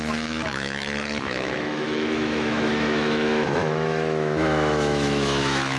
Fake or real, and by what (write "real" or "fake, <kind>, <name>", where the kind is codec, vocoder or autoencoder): fake, autoencoder, DAC-VAE